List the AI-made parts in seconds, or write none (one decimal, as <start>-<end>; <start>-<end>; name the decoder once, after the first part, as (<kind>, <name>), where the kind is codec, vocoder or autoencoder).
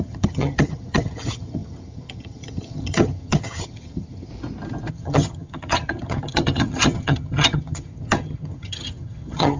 0.0-4.3 (vocoder, HiFi-GAN); 4.9-9.6